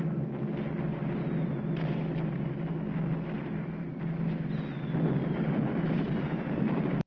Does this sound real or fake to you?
real